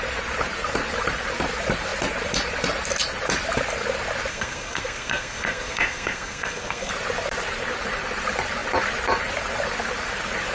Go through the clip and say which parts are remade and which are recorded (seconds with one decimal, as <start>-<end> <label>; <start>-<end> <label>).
0.0-4.3 recorded; 4.3-6.9 remade; 6.9-10.5 recorded